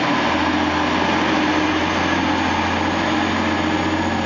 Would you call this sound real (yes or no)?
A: yes